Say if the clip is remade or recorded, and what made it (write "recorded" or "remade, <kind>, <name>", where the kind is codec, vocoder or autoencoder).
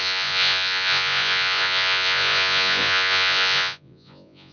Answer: remade, vocoder, Vocos